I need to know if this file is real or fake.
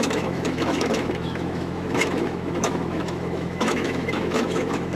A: fake